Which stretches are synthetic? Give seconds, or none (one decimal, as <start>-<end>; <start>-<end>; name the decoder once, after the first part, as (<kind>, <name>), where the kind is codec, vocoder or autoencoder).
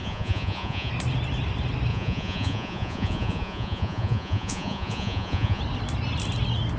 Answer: 0.0-0.9 (vocoder, Vocos); 1.9-5.6